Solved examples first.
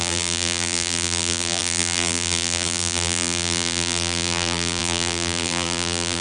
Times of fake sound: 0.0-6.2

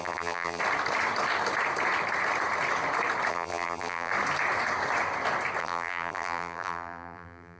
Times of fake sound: 0.0-0.6; 3.3-4.1; 5.6-7.6

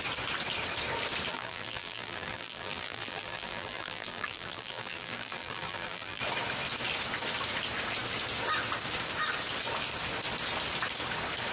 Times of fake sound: 1.3-6.2

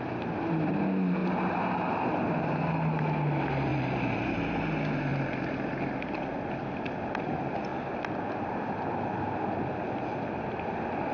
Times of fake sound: 3.7-4.5

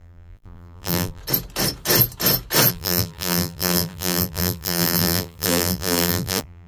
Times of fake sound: 0.0-1.2; 2.7-6.7

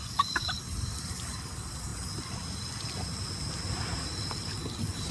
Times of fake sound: none

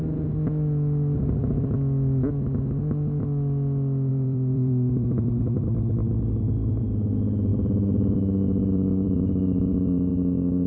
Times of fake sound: 4.1-6.8; 7.5-10.1

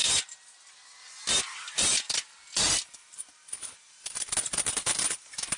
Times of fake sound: 3.0-5.6